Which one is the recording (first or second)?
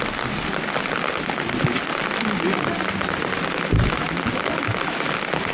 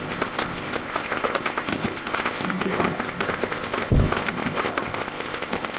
first